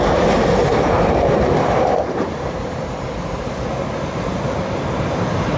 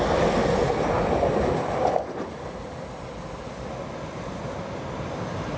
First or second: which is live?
second